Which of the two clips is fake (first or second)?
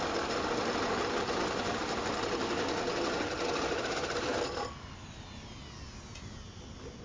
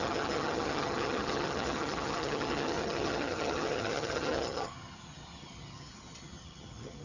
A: second